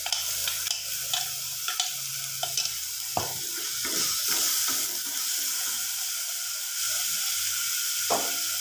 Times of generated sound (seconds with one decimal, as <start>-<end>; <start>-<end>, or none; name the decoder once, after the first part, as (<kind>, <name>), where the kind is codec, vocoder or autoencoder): none